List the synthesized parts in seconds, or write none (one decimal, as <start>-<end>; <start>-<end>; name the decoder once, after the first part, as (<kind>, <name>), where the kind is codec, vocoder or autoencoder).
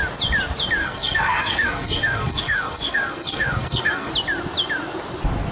0.8-4.1 (codec, SNAC)